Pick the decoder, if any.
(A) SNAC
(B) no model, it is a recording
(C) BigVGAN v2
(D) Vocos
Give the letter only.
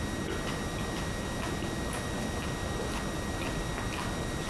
B